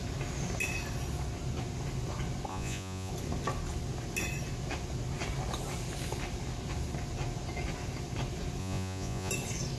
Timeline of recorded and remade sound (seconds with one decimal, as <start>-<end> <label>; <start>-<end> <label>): 0.0-2.5 recorded; 2.5-3.1 remade; 3.1-8.6 recorded; 8.6-9.3 remade; 9.3-9.8 recorded